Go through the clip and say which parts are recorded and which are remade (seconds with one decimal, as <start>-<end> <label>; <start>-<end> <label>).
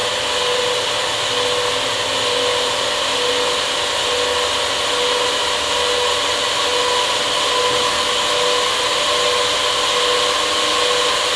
0.0-11.4 recorded